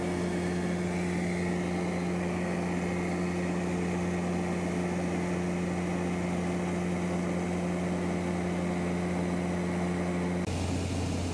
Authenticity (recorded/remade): recorded